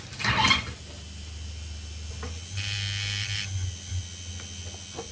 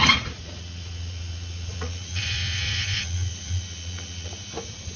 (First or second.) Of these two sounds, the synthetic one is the second